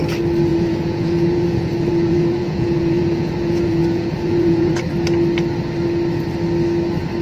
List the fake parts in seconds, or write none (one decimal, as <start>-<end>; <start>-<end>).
0.5-4.8